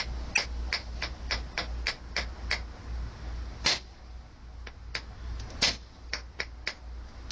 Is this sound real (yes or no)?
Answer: yes